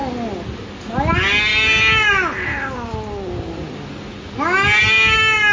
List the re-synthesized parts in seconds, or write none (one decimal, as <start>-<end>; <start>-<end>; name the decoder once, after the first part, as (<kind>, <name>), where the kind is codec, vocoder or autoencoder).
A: none